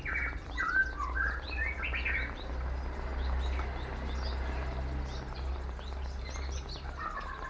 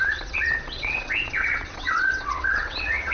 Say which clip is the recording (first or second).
first